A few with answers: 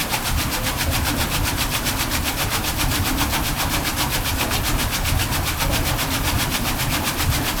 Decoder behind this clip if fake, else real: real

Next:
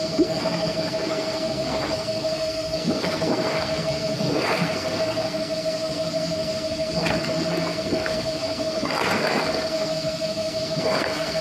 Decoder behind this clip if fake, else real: fake, codec, SNAC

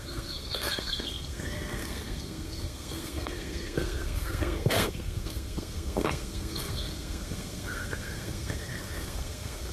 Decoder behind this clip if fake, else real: fake, codec, SNAC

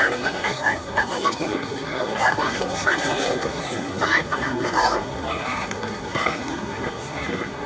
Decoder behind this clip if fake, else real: fake, codec, SNAC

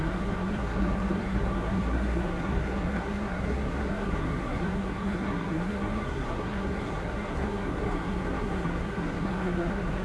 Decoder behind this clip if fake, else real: fake, codec, SNAC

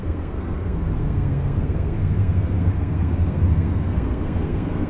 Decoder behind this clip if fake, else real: fake, codec, SNAC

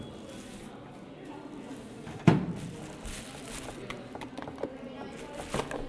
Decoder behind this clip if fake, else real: real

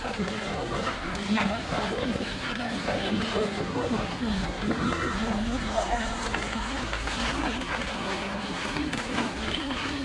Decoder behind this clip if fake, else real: fake, codec, SNAC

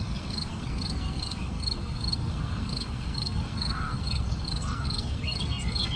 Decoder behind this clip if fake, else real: fake, codec, SNAC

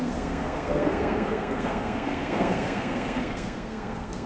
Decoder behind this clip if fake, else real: fake, codec, SNAC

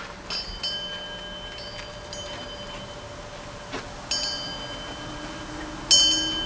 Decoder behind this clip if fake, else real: real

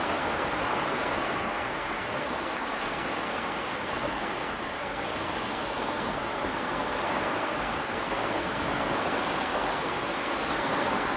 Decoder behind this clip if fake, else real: fake, codec, SNAC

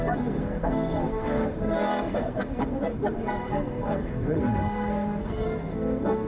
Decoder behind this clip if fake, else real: fake, codec, SNAC